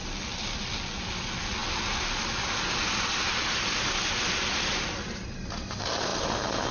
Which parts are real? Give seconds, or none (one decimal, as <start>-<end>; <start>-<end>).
0.0-6.7